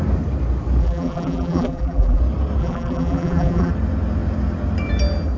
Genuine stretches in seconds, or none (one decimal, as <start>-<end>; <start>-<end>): 0.0-0.8; 2.2-2.6; 3.7-5.4